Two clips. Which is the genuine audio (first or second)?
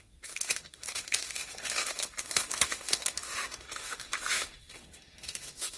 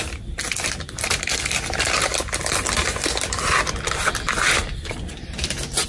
second